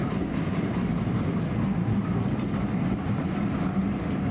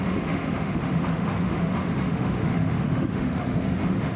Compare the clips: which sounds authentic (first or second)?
first